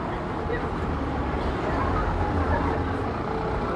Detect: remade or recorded recorded